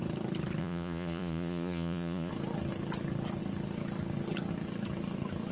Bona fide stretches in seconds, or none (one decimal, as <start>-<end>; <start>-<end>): 0.0-0.6; 2.3-5.5